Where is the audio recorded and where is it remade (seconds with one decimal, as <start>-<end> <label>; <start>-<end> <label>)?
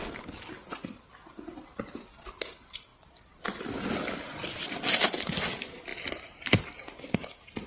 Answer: 0.0-7.7 recorded